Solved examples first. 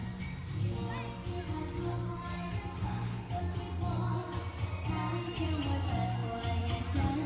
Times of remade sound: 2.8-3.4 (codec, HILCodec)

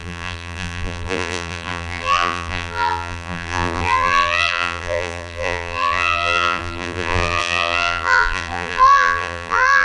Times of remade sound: 0.0-9.8 (vocoder, BigVGAN v2)

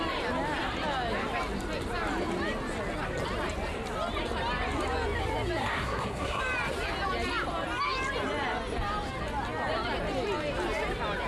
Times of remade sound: 5.6-6.4 (codec, SNAC)

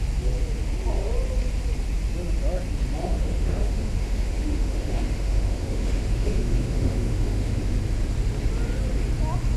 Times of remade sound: 3.0-7.6 (autoencoder, DAC-VAE)

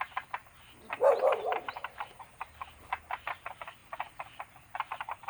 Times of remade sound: 0.0-5.3 (vocoder, BigVGAN v2)

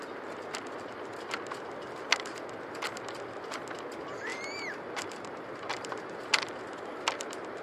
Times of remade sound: 4.3-6.2 (vocoder, BigVGAN v2)

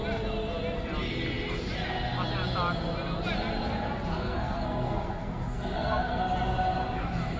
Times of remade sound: 4.1-6.2 (codec, SNAC)